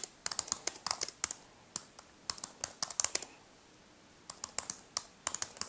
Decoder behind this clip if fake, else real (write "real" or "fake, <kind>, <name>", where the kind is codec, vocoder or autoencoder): real